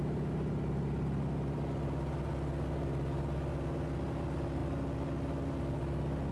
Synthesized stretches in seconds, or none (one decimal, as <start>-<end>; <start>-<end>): none